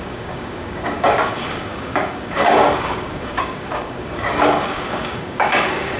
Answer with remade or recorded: remade